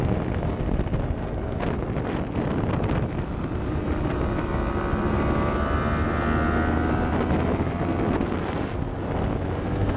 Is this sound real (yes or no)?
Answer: yes